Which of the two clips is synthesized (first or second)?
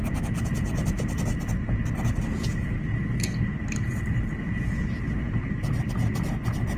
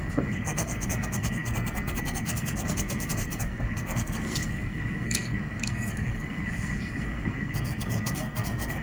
second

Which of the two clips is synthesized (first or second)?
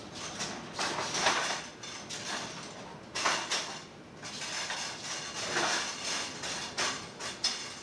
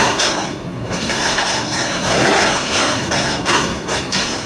second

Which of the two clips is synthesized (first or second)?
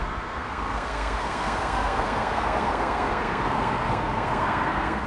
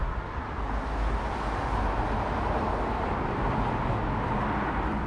first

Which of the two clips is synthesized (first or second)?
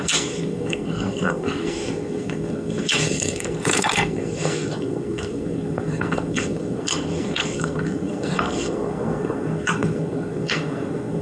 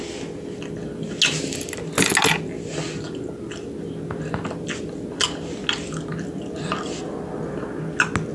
first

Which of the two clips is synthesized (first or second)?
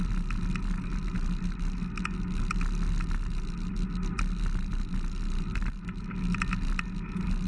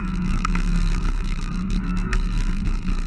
second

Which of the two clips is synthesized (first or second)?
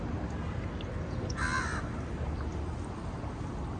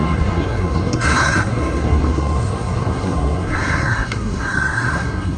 second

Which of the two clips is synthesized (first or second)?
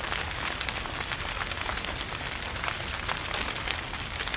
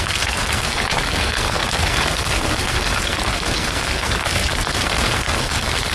second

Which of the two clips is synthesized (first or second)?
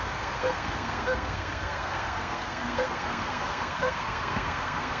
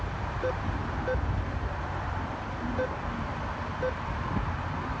first